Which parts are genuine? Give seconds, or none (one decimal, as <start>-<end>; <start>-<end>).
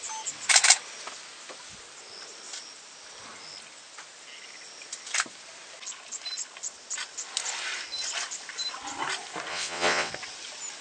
0.0-9.5; 10.1-10.8